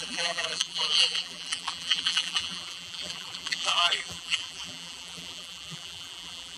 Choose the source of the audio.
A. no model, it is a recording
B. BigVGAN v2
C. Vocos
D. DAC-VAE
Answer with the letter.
B